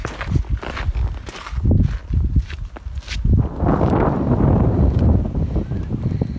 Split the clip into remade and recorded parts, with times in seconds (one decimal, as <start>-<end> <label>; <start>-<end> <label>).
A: 0.0-6.4 recorded